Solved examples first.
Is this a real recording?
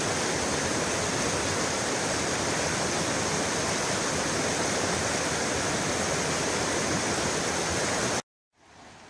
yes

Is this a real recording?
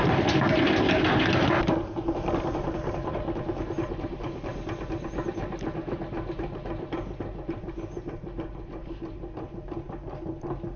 yes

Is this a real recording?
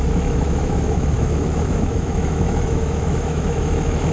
no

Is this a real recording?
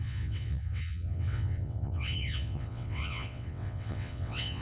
no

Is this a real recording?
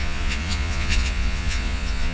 no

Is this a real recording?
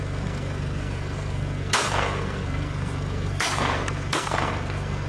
no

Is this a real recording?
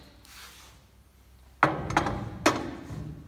yes